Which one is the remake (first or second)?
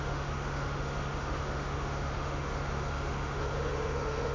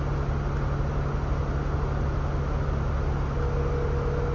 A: first